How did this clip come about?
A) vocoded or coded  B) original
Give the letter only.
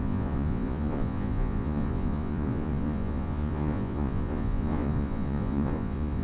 A